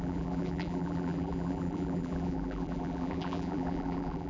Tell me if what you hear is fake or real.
fake